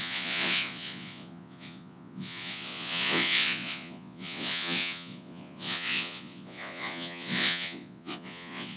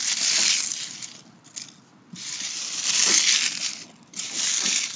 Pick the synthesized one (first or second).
first